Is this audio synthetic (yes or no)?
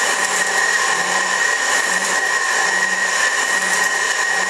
yes